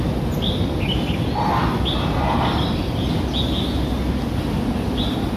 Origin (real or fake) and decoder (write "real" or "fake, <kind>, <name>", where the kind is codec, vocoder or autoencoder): real